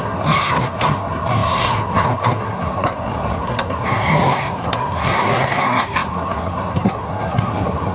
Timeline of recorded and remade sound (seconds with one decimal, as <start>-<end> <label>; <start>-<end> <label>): 0.0-7.9 remade